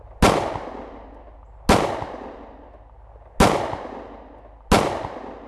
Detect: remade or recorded recorded